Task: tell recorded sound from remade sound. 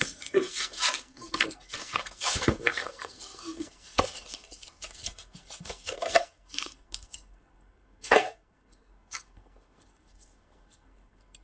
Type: remade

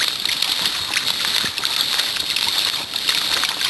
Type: recorded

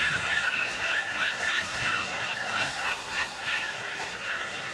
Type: remade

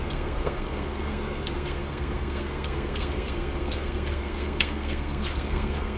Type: remade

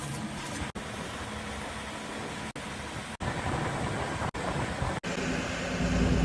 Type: recorded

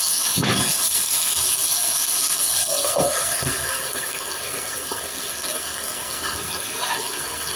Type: remade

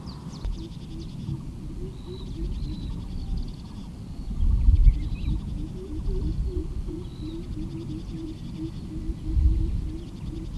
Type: recorded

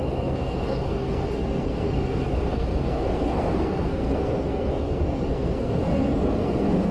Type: remade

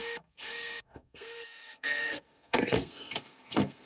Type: remade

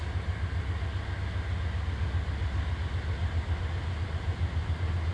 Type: recorded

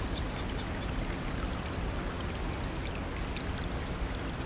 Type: recorded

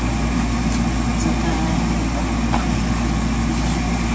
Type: recorded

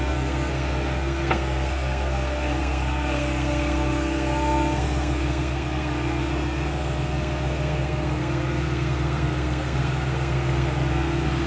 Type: remade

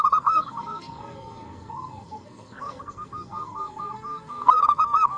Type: remade